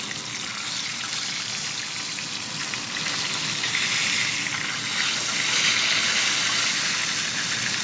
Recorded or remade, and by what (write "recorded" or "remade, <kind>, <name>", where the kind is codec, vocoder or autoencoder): recorded